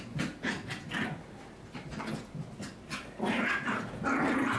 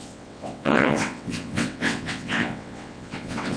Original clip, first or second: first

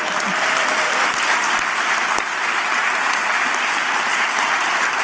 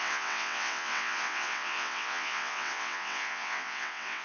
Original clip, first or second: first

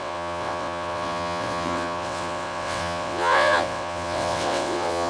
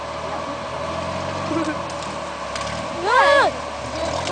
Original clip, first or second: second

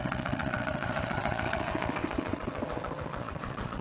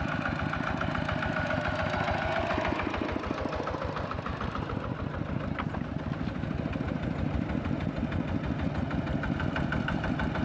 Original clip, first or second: second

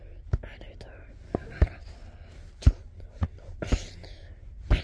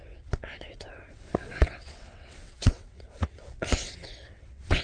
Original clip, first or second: first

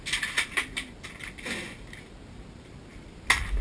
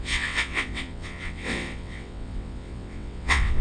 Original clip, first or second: first